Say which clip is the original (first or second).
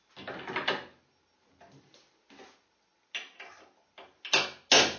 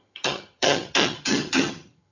first